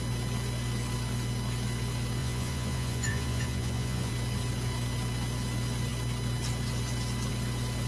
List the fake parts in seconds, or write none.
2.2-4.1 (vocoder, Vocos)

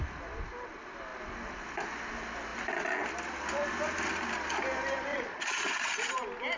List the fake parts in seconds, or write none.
5.1-5.9 (vocoder, Vocos)

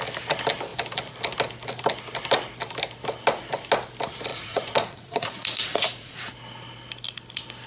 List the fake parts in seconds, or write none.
4.3-6.3 (vocoder, Vocos)

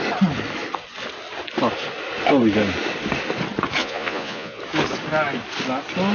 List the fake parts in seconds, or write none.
3.8-4.6 (vocoder, Vocos)